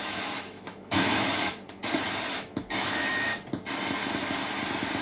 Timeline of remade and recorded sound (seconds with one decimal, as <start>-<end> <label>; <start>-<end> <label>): 0.0-1.8 remade; 1.8-2.3 recorded; 2.3-3.3 remade; 3.3-5.0 recorded